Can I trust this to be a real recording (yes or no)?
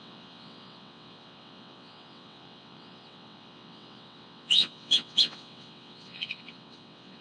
no